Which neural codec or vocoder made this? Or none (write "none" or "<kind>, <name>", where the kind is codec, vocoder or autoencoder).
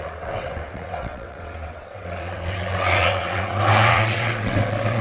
vocoder, WaveNeXt